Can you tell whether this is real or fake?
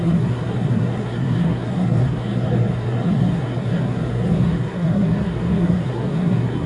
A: fake